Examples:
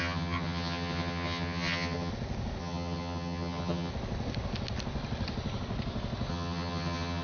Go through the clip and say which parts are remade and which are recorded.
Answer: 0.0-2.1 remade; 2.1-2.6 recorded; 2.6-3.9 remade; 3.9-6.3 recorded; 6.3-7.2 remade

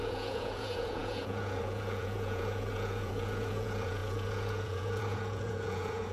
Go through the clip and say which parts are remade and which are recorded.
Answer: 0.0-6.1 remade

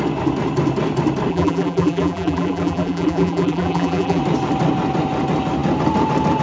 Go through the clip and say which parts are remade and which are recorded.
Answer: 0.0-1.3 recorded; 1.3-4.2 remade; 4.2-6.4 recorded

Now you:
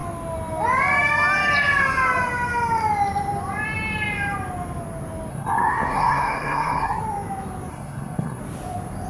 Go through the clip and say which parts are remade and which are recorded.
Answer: 0.0-5.3 recorded; 5.3-7.0 remade; 7.0-7.7 recorded; 7.7-8.4 remade; 8.4-9.1 recorded